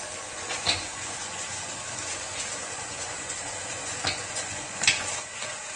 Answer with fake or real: fake